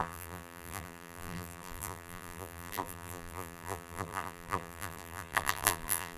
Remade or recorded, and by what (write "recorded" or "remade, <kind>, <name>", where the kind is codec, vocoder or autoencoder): remade, vocoder, BigVGAN v2